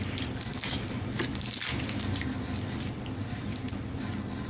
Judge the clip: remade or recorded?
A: recorded